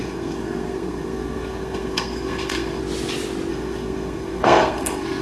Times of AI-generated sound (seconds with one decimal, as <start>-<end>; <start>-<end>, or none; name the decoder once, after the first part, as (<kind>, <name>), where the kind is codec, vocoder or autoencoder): 0.0-2.8 (codec, SNAC); 3.5-5.2